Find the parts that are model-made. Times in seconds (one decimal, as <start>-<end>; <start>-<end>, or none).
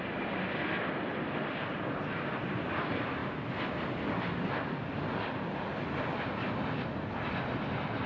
none